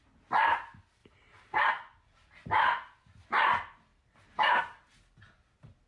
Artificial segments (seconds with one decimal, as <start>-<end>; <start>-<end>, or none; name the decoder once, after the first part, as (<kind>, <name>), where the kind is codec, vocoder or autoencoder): 1.0-1.7 (vocoder, BigVGAN v2); 3.9-4.6